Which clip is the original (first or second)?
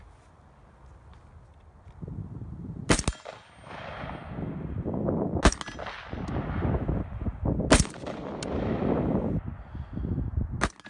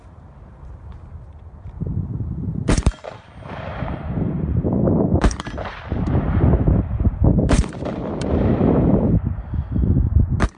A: first